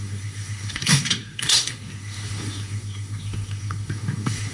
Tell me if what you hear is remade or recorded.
remade